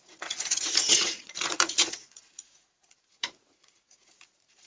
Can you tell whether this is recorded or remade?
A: remade